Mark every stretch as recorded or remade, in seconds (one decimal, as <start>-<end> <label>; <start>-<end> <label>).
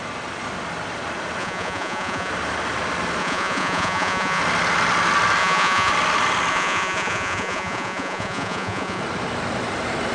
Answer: 0.0-1.4 recorded; 1.4-2.3 remade; 2.3-3.2 recorded; 3.2-4.4 remade; 4.4-5.4 recorded; 5.4-5.9 remade; 5.9-6.5 recorded; 6.5-9.0 remade; 9.0-10.1 recorded